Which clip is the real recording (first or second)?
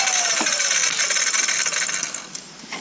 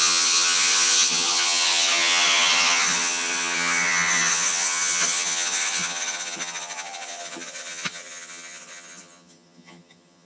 first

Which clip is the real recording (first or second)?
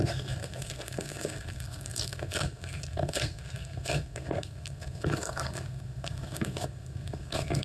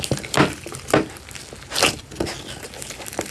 second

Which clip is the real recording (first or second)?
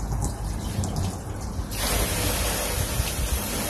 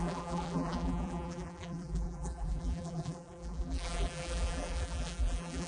first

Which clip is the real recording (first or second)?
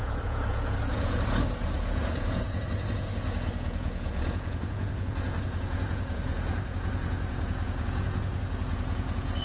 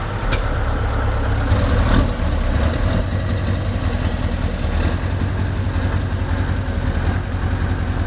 second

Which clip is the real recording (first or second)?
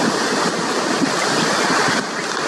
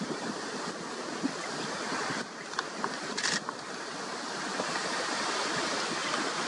first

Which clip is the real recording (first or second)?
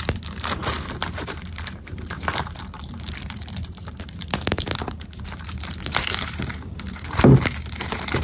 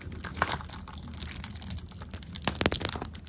second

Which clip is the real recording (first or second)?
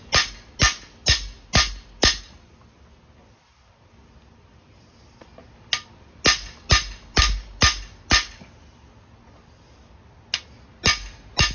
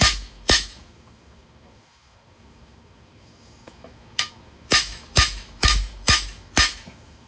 first